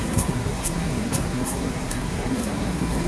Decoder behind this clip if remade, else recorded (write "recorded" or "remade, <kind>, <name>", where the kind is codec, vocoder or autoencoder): remade, codec, SNAC